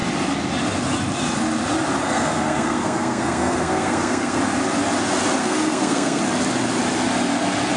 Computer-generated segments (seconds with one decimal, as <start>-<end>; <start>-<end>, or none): 2.0-4.4; 5.4-6.2